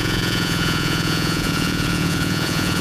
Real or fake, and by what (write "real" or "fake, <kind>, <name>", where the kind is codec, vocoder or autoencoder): fake, vocoder, Vocos